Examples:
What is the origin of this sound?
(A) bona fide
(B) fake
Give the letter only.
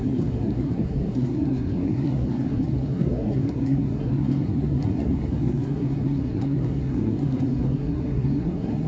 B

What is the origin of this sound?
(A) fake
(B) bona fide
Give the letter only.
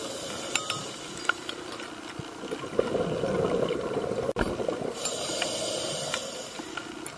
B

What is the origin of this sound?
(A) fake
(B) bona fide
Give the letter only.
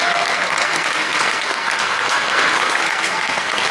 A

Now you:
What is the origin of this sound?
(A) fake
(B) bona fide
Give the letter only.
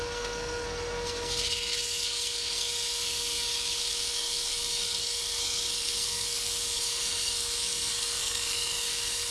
A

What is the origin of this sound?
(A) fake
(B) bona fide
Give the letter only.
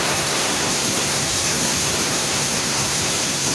A